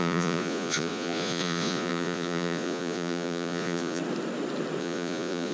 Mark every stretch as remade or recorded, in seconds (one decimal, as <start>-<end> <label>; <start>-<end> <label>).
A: 0.0-4.0 remade; 4.0-4.8 recorded; 4.8-5.5 remade